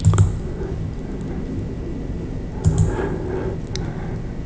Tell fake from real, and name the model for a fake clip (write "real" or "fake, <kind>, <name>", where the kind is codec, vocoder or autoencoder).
real